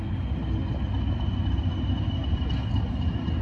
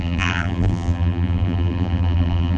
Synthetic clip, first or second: second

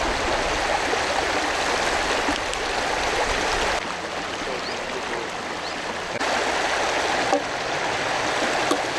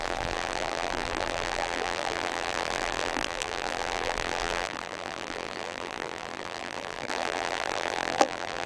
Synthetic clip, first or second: second